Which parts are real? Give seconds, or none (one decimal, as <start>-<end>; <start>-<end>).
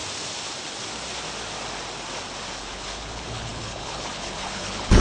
0.0-2.6